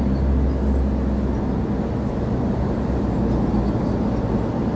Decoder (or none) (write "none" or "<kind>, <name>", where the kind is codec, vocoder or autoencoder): none